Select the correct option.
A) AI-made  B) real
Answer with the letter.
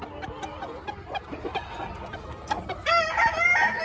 B